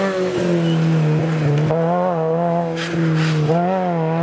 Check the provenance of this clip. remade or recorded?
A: recorded